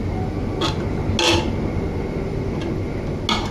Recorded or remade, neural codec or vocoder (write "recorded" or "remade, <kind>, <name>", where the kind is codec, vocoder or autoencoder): recorded